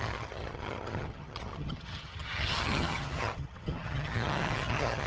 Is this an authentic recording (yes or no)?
no